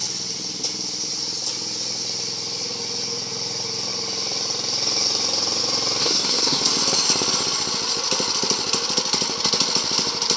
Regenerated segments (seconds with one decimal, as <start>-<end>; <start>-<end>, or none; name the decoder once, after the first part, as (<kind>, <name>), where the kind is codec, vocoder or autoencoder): 6.0-6.6 (codec, SNAC)